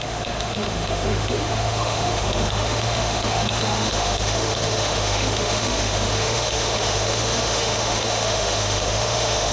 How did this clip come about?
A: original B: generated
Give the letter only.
B